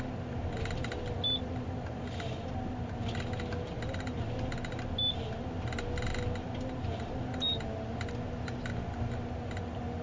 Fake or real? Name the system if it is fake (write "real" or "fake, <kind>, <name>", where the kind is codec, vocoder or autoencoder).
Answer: real